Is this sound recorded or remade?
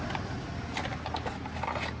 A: recorded